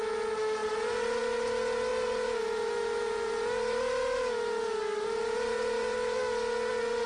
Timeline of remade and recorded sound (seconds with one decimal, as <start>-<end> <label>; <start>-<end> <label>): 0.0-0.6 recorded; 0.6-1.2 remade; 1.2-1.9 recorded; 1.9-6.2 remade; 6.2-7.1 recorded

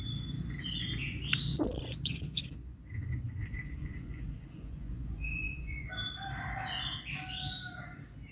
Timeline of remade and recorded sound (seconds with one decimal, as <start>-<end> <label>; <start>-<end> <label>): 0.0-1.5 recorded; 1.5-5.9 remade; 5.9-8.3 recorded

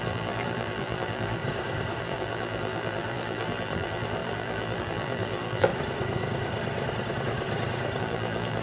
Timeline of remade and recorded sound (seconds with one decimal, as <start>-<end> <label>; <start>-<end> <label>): 0.0-1.4 remade; 1.4-2.0 recorded; 2.0-5.7 remade; 5.7-8.0 recorded; 8.0-8.6 remade

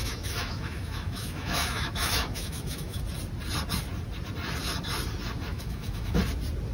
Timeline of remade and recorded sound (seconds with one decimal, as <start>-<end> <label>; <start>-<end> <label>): 0.0-3.0 remade; 3.0-5.5 recorded; 5.5-6.2 remade; 6.2-6.7 recorded

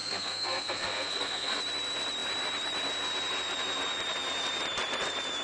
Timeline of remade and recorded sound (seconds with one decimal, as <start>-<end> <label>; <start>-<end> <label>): 0.0-1.6 remade; 1.6-5.4 recorded